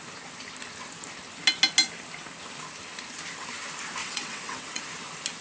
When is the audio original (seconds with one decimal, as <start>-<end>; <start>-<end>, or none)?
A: 0.0-4.0; 4.8-5.4